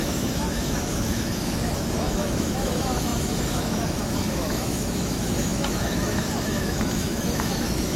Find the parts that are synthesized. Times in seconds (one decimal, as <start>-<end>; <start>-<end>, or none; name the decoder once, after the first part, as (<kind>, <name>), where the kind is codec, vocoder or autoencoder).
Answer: 0.0-8.0 (autoencoder, DAC-VAE)